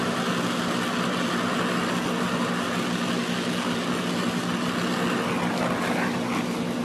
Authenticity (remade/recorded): recorded